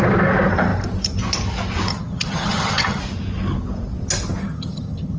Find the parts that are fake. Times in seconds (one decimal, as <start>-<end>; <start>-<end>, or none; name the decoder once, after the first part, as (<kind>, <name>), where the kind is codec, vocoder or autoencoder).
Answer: 1.9-3.0 (vocoder, HiFi-GAN); 4.4-5.2